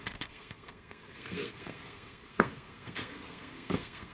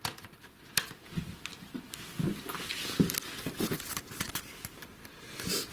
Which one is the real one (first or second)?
second